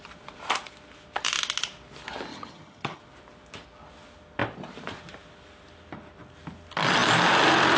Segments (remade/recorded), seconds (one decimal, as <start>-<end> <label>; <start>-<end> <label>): 0.0-2.3 recorded; 2.3-3.0 remade; 3.0-7.8 recorded